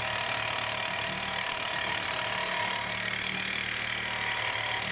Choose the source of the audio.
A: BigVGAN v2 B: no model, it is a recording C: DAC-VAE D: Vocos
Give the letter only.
B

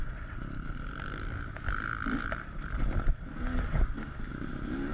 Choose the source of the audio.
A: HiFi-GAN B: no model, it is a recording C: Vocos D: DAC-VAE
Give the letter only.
B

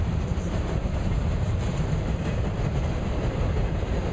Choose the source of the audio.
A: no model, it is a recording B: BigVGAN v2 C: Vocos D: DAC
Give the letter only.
B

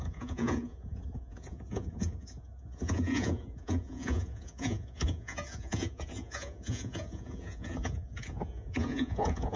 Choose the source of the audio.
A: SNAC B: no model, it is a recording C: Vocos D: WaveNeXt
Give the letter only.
C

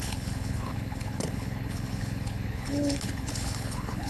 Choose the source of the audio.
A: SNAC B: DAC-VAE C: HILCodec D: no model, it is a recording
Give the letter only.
C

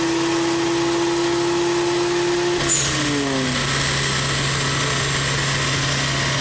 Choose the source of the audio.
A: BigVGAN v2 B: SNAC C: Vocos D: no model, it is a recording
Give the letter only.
D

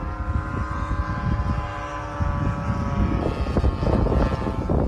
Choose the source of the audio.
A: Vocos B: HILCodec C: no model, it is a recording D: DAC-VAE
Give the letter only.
C